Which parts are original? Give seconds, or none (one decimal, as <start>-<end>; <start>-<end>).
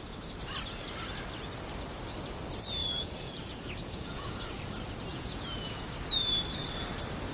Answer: 0.0-2.8; 4.6-5.1; 5.9-7.3